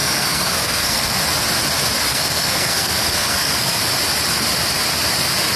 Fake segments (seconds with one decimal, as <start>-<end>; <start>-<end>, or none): 0.0-1.2; 2.1-3.8